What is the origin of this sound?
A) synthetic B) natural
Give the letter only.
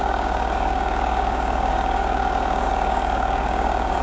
A